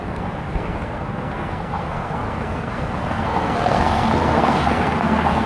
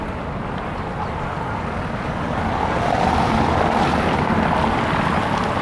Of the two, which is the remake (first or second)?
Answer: first